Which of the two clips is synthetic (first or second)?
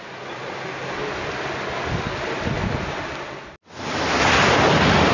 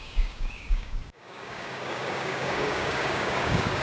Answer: second